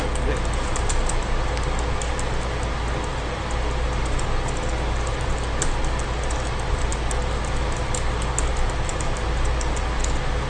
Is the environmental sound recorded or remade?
recorded